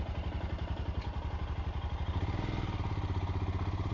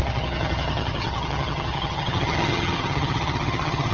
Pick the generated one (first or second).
second